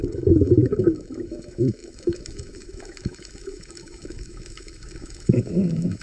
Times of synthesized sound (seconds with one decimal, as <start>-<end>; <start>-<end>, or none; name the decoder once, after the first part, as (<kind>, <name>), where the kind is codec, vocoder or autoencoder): 0.0-6.0 (autoencoder, DAC-VAE)